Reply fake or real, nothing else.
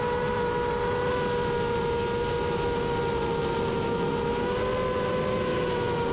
real